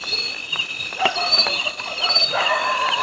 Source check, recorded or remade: recorded